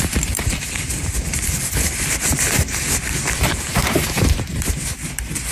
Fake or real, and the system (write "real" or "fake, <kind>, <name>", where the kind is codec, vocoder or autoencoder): fake, vocoder, BigVGAN v2